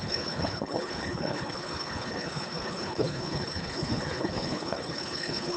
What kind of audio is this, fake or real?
fake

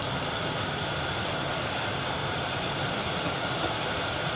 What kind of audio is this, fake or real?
real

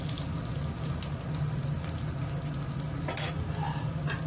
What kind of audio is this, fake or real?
real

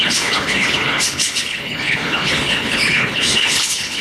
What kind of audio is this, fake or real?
fake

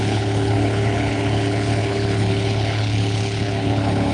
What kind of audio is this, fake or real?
fake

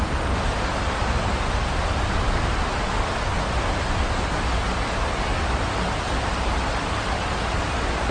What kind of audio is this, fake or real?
real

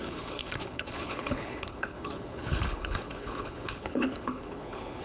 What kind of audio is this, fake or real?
fake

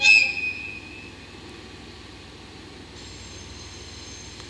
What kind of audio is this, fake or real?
real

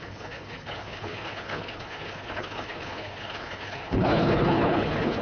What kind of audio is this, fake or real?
fake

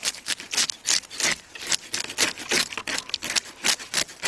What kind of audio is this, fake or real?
real